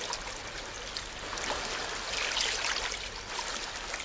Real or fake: real